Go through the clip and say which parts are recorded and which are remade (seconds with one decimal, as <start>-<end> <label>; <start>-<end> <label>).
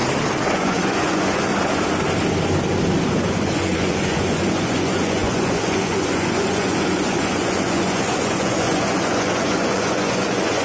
0.0-0.5 recorded; 0.5-1.5 remade; 1.5-3.3 recorded; 3.3-10.6 remade